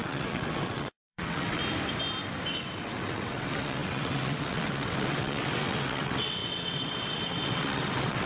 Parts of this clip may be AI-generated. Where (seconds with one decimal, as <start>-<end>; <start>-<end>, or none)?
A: 0.0-1.6; 2.5-8.3